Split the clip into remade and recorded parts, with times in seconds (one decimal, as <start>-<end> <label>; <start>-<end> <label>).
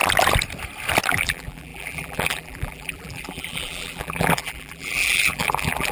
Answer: 0.0-1.1 recorded; 1.1-5.9 remade